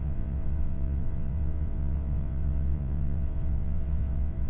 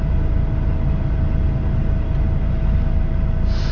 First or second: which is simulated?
first